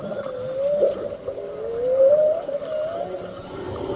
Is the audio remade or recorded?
recorded